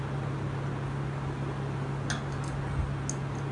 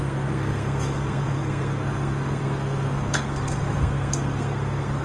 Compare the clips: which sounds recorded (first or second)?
first